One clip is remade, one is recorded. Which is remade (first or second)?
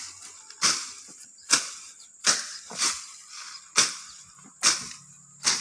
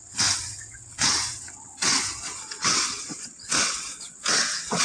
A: second